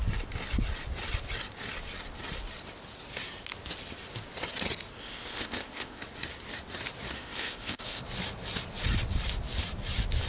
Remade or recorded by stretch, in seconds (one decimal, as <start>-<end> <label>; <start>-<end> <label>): 0.0-5.0 recorded; 5.0-6.0 remade; 6.0-7.2 recorded; 7.2-8.0 remade; 8.0-10.3 recorded

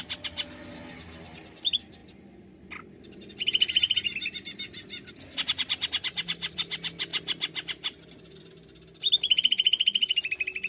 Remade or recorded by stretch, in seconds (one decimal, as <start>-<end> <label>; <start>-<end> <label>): 0.0-10.7 recorded

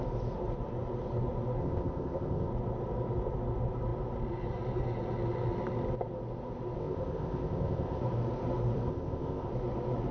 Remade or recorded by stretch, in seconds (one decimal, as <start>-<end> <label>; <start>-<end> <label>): 0.0-1.6 recorded; 1.6-2.5 remade; 2.5-6.8 recorded; 6.8-8.0 remade; 8.0-8.9 recorded; 8.9-9.5 remade; 9.5-10.1 recorded

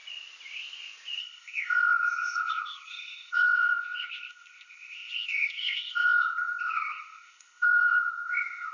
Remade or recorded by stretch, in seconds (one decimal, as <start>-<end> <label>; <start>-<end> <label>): 0.0-1.2 recorded; 1.2-8.7 remade

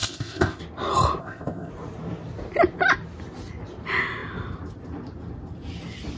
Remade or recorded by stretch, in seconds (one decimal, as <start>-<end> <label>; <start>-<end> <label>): 0.0-0.6 remade; 0.6-1.2 recorded; 1.2-1.7 remade; 1.7-6.2 recorded

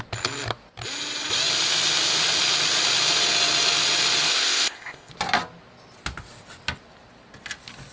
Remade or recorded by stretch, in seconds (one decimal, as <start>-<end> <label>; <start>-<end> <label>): 0.0-4.3 recorded; 4.3-5.1 remade; 5.1-7.9 recorded